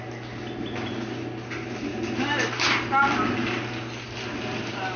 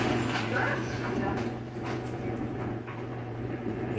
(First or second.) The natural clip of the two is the first